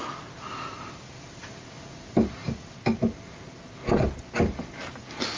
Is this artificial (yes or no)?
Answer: no